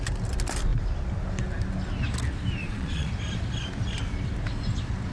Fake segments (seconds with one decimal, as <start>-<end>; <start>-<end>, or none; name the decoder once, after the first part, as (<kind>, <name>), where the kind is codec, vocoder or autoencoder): 2.6-3.1 (vocoder, Vocos)